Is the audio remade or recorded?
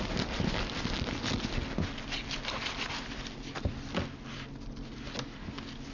recorded